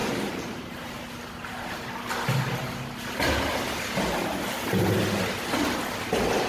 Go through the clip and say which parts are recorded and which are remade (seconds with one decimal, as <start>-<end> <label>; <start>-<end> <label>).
0.0-1.0 remade; 1.0-6.5 recorded